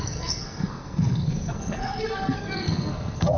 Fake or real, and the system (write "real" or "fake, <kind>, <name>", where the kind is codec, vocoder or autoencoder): fake, codec, SNAC